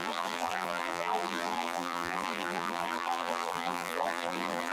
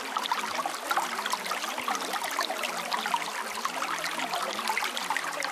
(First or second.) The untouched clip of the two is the second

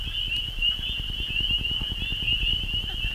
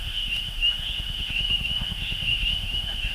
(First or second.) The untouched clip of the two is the first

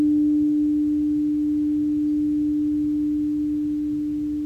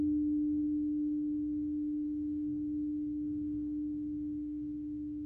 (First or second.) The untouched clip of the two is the first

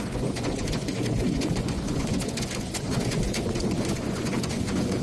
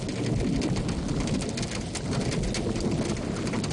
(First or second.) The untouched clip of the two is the second